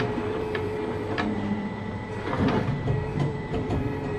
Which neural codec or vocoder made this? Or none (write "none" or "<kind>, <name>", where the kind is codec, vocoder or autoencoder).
vocoder, BigVGAN v2